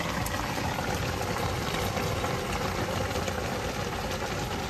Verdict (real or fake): real